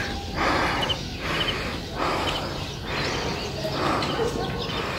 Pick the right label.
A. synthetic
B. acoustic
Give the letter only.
B